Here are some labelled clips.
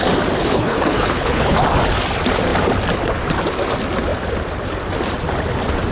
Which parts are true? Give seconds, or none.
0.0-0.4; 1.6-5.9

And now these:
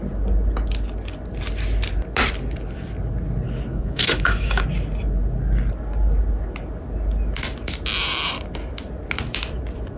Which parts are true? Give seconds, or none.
0.0-3.7; 4.6-10.0

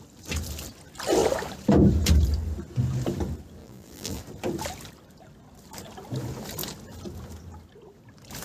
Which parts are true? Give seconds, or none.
0.0-3.6; 4.2-8.4

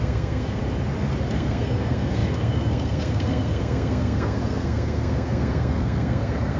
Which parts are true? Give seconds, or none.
0.6-1.3

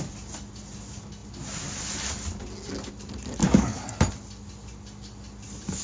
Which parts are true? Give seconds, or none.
0.0-3.4; 3.9-5.8

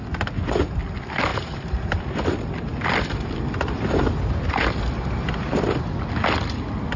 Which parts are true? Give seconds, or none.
0.0-7.0

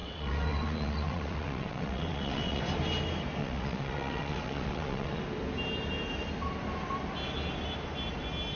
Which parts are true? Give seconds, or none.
2.6-3.4; 5.2-8.6

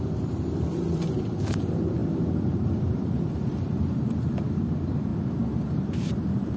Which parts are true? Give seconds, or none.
5.1-5.6